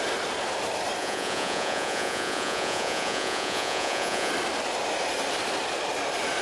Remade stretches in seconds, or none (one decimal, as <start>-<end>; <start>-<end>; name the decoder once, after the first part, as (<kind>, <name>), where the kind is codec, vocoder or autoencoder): 1.0-4.3 (vocoder, Vocos)